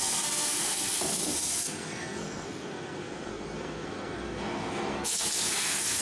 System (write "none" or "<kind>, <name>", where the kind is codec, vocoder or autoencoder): codec, SNAC